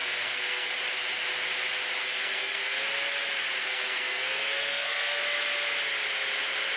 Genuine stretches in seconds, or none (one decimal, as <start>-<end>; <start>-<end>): 0.7-2.0; 2.8-3.6; 5.2-6.8

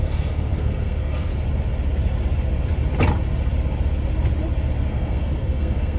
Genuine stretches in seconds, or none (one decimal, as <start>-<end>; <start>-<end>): 1.3-4.9

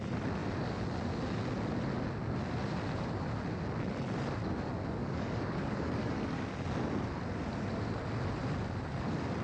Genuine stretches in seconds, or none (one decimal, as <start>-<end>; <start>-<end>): 0.0-5.0; 6.5-9.4

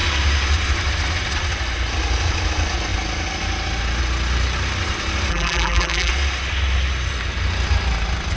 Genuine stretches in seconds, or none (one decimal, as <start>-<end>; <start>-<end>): 0.0-5.3; 6.1-8.4

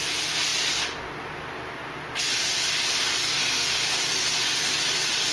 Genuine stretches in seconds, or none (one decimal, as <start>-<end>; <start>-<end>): 0.0-3.2; 3.7-5.3